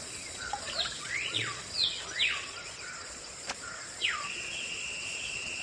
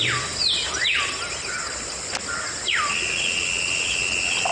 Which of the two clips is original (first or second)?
second